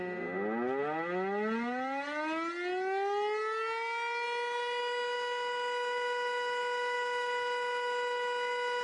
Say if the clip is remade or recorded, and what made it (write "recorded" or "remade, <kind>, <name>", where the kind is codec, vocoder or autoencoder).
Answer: recorded